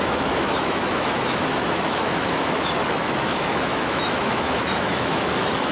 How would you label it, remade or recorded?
remade